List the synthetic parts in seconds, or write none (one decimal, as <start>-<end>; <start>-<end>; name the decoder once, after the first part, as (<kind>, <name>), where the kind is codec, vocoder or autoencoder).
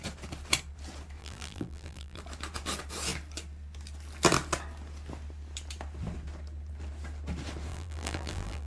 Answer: 1.2-2.2 (vocoder, BigVGAN v2); 7.7-8.7